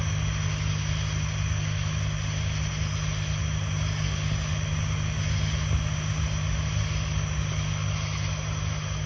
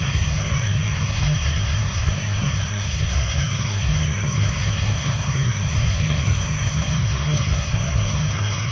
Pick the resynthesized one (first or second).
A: second